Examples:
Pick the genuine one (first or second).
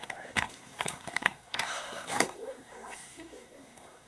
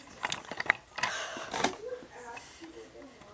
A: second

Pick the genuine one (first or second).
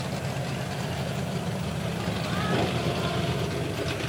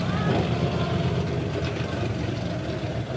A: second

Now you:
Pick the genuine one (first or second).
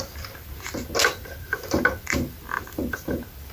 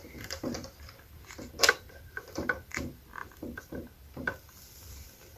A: first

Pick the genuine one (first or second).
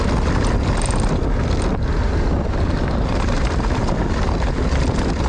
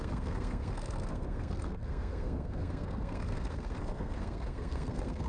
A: first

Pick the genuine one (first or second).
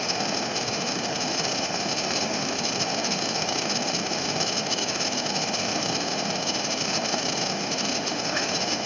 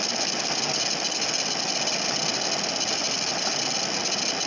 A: second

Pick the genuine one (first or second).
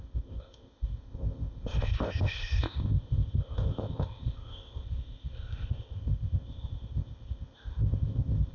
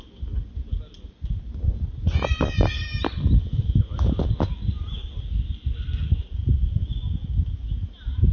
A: second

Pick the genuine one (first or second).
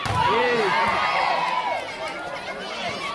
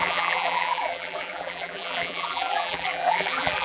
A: first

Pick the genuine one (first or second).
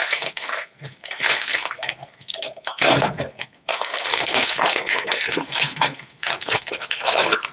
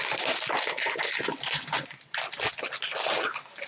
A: second